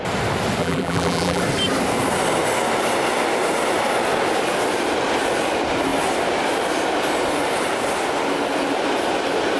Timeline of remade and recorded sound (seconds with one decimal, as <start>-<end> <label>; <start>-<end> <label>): 0.0-0.6 recorded; 0.6-1.4 remade; 1.4-9.6 recorded